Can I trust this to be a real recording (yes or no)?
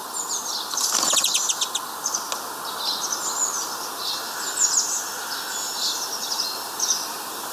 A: yes